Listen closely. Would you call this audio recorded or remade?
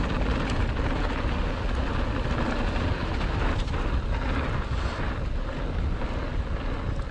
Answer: recorded